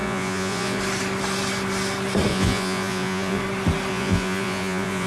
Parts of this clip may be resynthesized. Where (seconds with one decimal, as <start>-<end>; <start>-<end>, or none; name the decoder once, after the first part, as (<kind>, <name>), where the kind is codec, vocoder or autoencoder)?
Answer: 0.0-0.8 (vocoder, Vocos); 2.3-3.4; 3.9-5.1